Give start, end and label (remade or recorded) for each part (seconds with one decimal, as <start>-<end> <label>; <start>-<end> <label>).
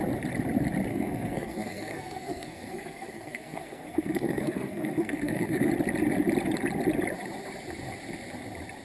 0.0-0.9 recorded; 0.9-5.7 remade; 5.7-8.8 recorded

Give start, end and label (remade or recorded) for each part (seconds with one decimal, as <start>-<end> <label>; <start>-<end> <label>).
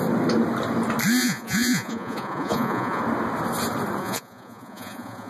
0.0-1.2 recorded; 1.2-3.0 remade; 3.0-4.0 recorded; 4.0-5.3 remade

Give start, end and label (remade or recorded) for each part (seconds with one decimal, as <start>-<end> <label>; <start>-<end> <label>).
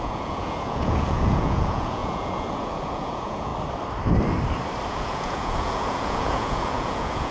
0.0-3.5 remade; 3.5-4.9 recorded; 4.9-7.3 remade